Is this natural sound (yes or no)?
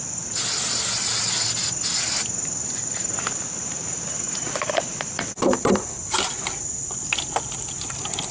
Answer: yes